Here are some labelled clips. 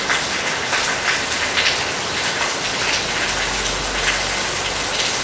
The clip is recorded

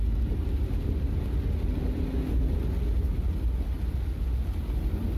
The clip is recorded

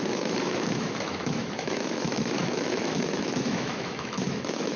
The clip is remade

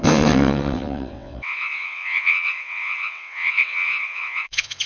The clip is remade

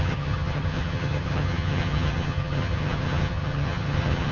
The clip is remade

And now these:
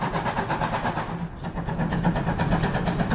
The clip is recorded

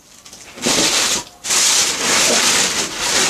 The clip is remade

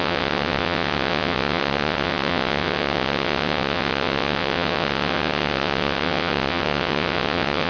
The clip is remade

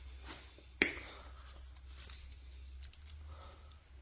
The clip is recorded